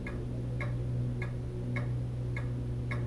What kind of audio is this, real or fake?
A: real